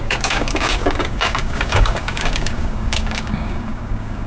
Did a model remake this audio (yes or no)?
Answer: yes